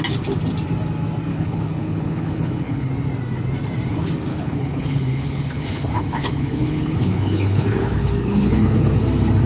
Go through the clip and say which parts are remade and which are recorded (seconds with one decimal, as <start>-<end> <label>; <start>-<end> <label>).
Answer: 0.0-1.3 recorded; 1.3-2.9 remade; 2.9-4.3 recorded; 4.3-9.0 remade; 9.0-9.5 recorded